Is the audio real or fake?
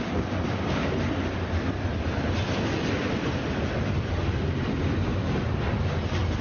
real